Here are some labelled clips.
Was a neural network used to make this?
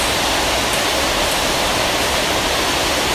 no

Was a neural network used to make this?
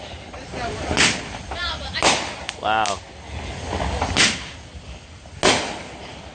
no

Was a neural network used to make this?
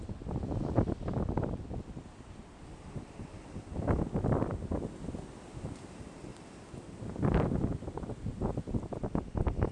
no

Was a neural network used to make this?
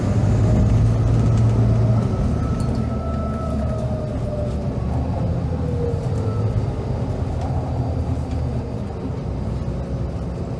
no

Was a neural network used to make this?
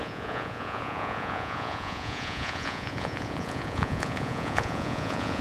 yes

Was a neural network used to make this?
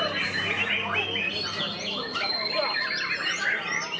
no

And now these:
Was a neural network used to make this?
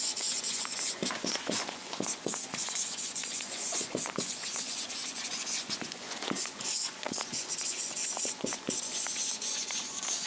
yes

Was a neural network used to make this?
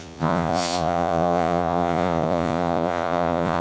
yes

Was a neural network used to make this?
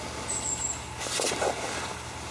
no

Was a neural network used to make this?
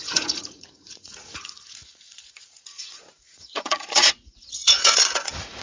yes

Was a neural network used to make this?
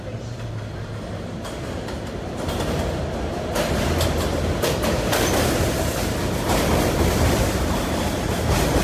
no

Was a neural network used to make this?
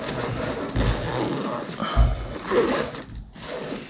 no